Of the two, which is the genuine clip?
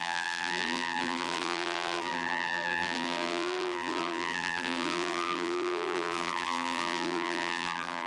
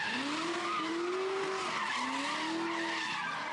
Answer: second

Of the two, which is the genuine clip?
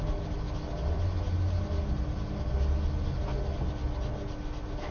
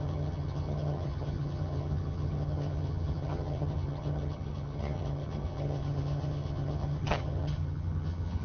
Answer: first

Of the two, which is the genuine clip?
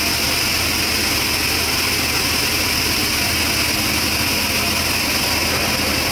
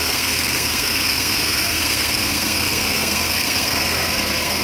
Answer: first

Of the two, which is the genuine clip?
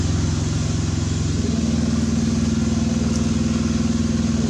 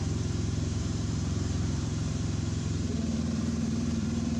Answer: first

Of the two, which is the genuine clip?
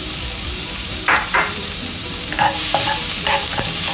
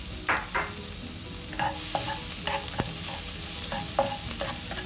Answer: second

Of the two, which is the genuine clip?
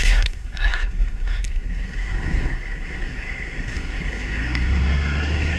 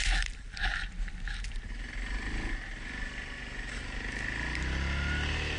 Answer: second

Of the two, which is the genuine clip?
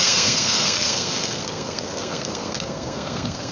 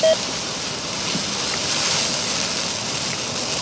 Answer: second